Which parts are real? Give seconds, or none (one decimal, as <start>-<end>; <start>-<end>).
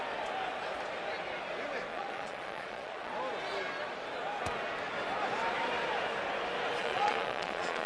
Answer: 0.0-1.9; 3.1-6.8